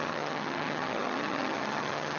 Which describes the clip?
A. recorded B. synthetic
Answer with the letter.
B